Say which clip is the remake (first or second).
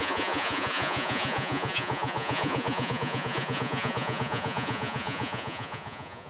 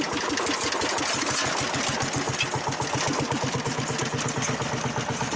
first